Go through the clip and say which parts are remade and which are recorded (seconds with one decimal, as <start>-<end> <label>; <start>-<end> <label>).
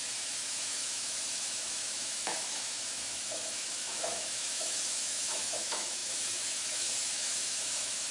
0.0-8.1 remade